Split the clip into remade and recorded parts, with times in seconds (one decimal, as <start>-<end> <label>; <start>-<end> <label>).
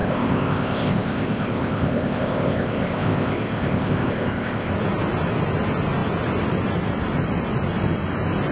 0.0-4.7 remade; 4.7-8.5 recorded